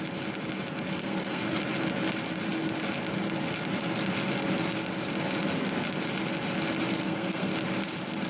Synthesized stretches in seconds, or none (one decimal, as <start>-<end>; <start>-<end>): 1.0-1.6; 6.9-7.5